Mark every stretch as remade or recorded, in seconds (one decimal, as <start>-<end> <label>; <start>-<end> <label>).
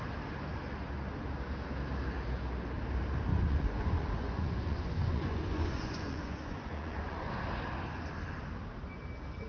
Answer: 0.0-3.3 recorded; 3.3-7.3 remade; 7.3-9.5 recorded